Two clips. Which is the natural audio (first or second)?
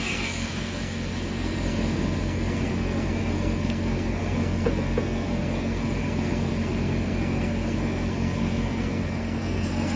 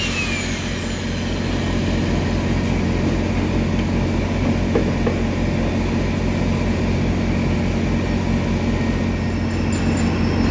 second